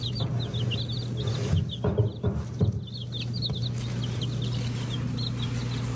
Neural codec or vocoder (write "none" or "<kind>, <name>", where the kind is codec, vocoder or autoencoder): none